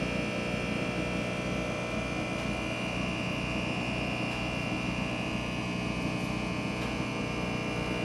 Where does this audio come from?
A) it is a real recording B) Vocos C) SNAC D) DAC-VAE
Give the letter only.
A